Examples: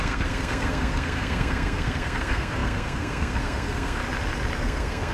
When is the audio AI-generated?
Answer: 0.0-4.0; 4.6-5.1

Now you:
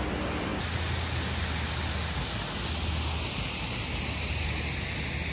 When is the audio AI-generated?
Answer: none

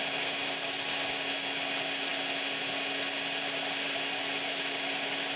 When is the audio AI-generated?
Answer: none

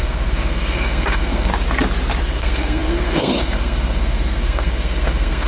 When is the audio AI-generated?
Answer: 0.0-1.5; 2.2-5.5

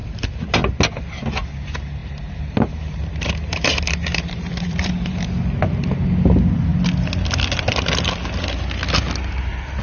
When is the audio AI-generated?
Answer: 0.0-0.5; 2.0-5.4

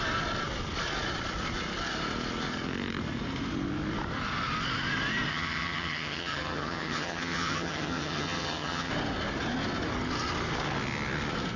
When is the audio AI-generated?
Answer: 5.3-8.9

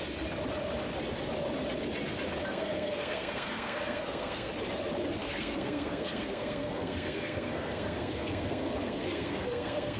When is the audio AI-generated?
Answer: 2.5-4.5; 5.2-10.0

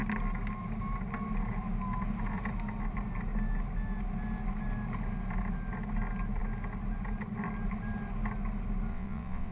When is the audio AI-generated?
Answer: 8.9-9.5